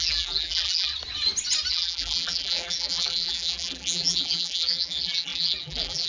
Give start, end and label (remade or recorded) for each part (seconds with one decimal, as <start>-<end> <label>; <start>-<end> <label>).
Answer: 0.0-0.9 remade; 0.9-1.7 recorded; 1.7-6.1 remade